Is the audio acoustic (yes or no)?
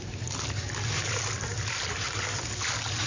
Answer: yes